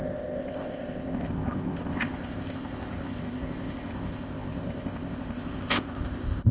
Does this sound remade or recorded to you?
remade